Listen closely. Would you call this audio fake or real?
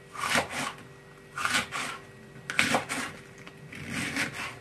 real